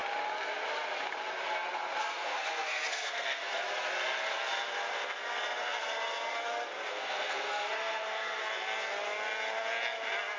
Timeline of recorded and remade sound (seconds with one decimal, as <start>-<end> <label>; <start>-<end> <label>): 0.0-2.0 recorded; 2.0-3.5 remade; 3.5-6.9 recorded; 6.9-8.4 remade; 8.4-10.4 recorded